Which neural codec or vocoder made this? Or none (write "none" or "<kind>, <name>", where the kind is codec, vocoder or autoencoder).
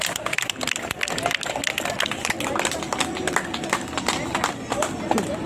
none